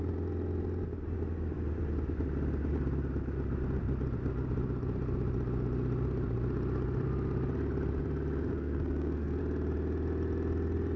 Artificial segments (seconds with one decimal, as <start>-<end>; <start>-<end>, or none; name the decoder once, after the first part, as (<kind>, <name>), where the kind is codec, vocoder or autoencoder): 8.5-9.4 (codec, SNAC)